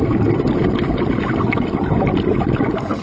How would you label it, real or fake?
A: real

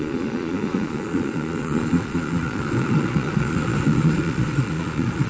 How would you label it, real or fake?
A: fake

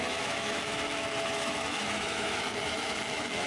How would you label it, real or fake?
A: fake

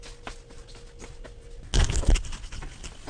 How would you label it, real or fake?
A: real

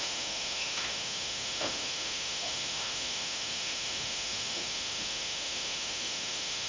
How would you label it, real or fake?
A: fake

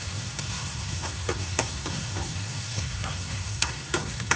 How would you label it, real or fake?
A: fake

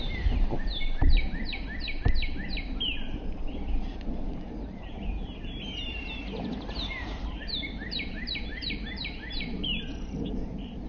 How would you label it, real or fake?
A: fake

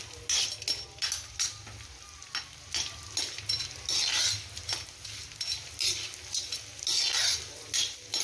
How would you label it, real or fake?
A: real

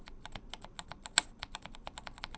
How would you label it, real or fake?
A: real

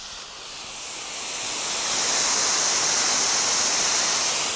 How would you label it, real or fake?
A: real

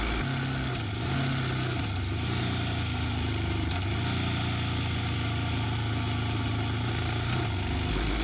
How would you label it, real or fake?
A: real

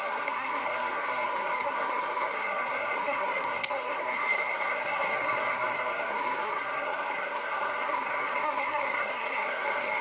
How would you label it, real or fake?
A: fake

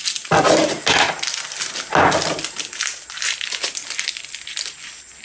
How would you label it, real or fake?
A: real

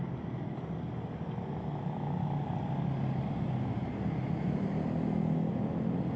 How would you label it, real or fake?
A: real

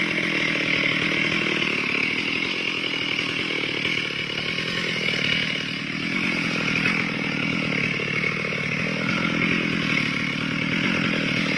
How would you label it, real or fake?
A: real